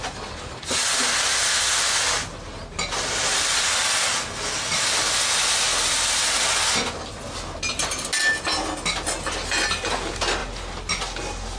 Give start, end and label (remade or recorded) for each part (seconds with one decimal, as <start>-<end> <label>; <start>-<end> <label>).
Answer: 0.0-11.6 recorded